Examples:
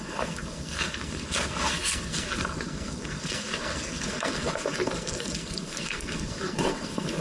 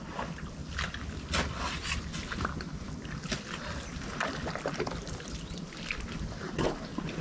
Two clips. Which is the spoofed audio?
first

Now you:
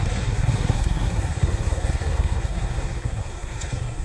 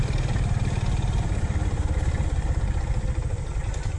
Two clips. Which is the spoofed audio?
first